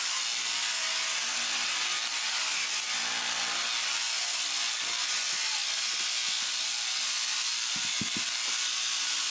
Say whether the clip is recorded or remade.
recorded